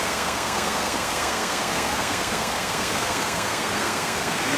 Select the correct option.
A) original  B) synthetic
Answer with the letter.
B